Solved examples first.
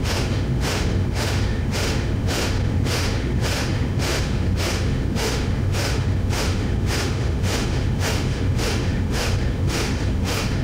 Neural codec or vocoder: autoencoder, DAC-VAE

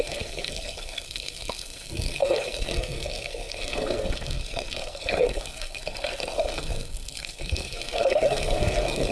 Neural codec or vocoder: codec, SNAC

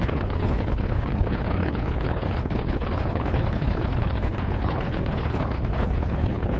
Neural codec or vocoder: codec, HILCodec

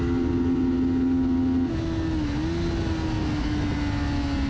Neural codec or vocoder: none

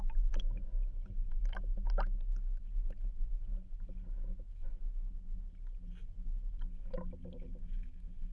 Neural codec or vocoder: none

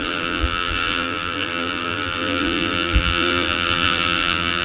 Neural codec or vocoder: vocoder, BigVGAN v2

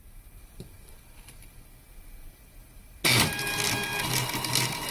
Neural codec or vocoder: none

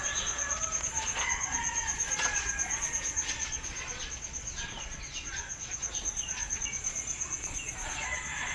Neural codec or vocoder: vocoder, Vocos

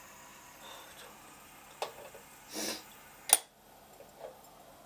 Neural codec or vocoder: none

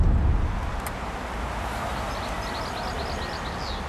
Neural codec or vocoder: none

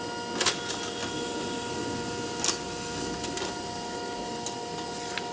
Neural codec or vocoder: none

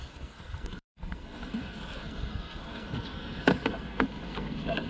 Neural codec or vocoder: codec, SNAC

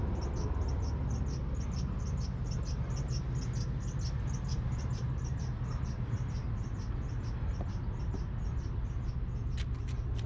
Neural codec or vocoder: none